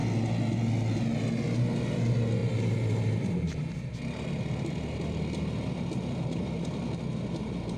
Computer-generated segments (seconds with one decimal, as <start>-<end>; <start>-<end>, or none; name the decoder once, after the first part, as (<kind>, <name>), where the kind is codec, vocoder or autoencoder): 2.4-4.4 (vocoder, BigVGAN v2)